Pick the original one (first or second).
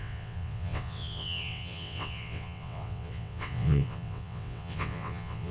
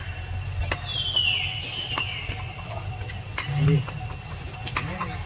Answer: second